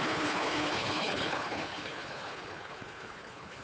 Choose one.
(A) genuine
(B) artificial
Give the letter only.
B